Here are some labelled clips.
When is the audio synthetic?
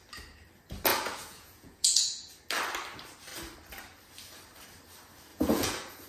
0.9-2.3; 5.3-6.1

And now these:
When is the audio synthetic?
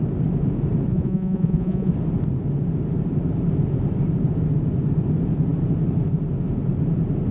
0.9-1.9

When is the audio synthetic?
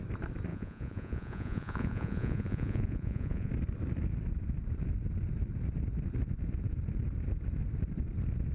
0.5-3.5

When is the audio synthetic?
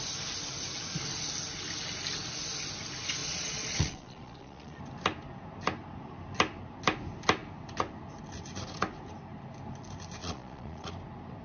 3.2-4.8; 10.2-10.9